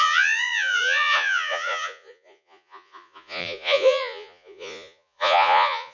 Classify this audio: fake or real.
fake